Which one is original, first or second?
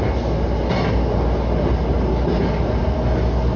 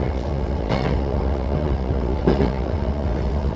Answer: first